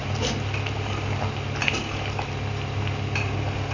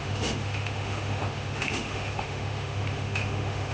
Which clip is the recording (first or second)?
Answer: first